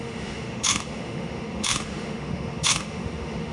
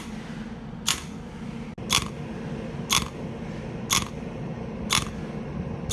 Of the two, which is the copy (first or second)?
first